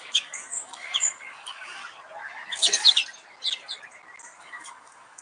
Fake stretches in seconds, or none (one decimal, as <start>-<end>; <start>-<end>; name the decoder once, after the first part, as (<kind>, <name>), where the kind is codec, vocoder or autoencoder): 0.0-1.8 (codec, DAC); 2.5-3.0; 4.4-5.2